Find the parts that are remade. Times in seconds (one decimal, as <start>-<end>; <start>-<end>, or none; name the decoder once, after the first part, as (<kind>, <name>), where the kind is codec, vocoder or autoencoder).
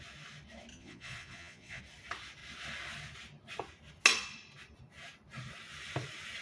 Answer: 0.7-1.8 (vocoder, Vocos)